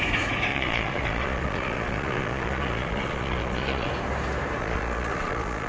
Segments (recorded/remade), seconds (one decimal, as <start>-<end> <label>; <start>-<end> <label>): 0.0-0.5 recorded; 0.5-3.9 remade; 3.9-4.6 recorded; 4.6-5.7 remade